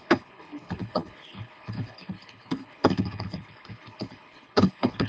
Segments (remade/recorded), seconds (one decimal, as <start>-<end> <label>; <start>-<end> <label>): 0.0-5.1 remade